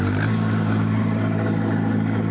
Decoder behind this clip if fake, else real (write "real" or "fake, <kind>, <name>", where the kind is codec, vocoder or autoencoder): real